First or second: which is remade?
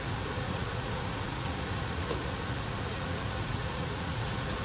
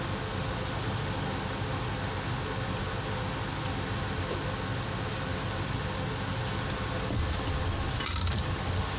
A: first